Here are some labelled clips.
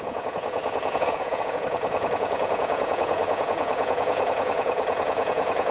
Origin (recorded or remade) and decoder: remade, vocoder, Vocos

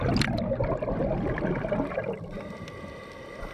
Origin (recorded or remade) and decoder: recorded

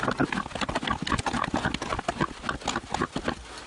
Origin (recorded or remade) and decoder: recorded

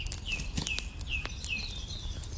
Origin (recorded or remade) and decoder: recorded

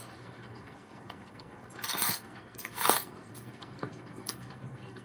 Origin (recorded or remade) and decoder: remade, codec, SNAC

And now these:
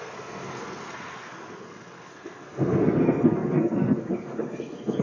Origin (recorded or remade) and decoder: remade, codec, SNAC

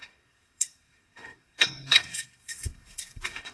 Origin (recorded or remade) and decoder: remade, codec, SNAC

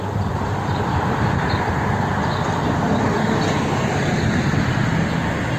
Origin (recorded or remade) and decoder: recorded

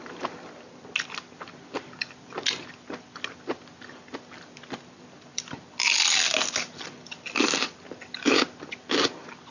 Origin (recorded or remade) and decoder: recorded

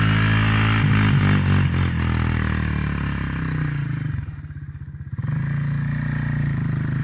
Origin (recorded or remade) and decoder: recorded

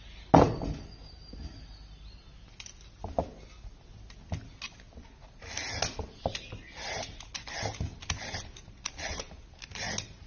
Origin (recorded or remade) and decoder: recorded